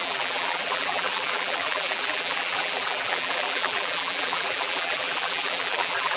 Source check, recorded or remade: remade